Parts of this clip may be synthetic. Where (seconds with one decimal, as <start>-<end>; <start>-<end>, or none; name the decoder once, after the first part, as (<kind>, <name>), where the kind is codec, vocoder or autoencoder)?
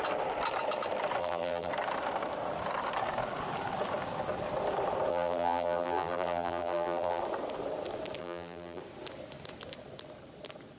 1.2-1.7 (vocoder, BigVGAN v2); 5.1-7.2; 8.2-8.8